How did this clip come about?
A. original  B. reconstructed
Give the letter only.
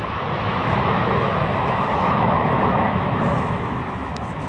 B